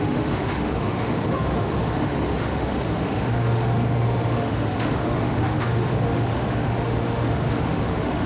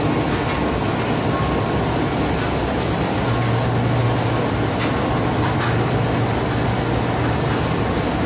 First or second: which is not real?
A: first